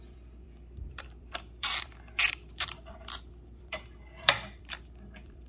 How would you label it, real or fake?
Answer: fake